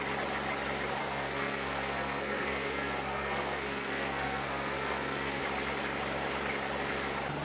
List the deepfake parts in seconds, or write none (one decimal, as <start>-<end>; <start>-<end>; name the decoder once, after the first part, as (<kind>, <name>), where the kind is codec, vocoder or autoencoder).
1.0-5.4 (codec, SNAC)